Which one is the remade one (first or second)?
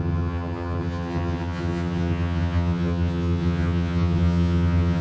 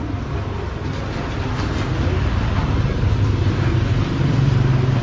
first